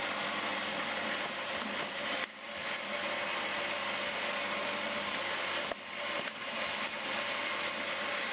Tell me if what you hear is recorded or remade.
recorded